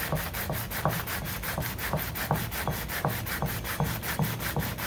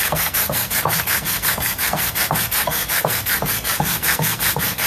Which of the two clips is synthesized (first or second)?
second